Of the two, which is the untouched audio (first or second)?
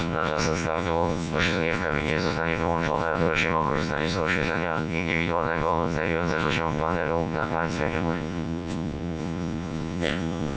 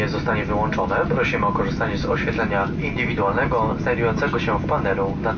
second